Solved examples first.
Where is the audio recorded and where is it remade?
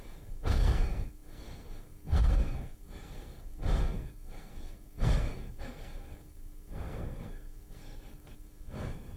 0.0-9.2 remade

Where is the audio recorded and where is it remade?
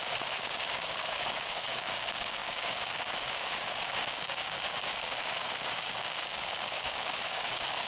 0.0-7.9 remade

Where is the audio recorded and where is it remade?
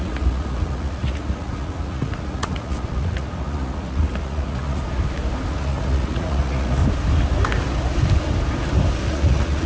0.0-4.8 remade; 4.8-5.5 recorded; 5.5-6.8 remade; 6.8-9.1 recorded; 9.1-9.7 remade